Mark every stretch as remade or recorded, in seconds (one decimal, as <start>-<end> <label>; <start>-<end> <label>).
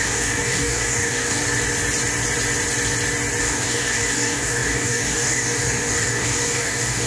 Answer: 0.0-1.4 remade; 1.4-3.4 recorded; 3.4-7.1 remade